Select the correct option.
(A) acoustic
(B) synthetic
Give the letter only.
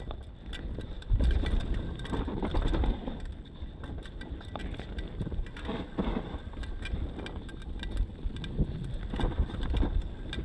A